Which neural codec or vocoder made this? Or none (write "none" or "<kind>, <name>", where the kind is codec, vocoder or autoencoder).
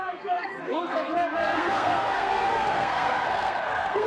codec, SNAC